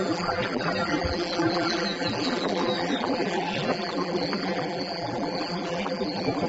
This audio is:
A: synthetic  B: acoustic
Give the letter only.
A